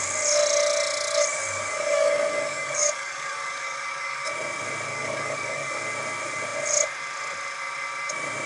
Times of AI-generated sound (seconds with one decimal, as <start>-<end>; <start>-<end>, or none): 1.3-4.3; 4.9-5.8